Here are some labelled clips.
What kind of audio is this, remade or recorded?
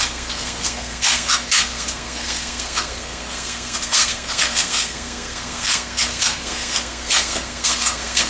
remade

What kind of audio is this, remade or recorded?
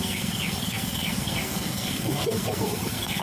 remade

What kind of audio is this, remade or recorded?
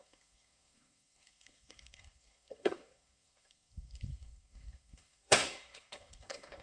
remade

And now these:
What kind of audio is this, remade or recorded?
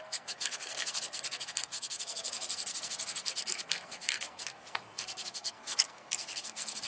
remade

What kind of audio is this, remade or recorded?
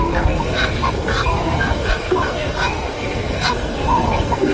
remade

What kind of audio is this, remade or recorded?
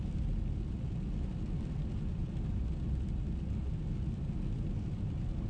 recorded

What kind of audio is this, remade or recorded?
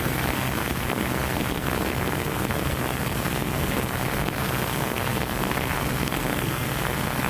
remade